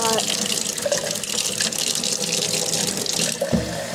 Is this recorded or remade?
recorded